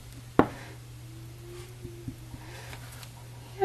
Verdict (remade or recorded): recorded